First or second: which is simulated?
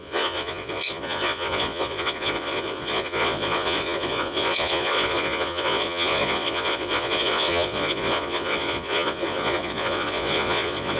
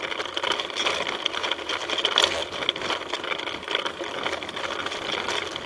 first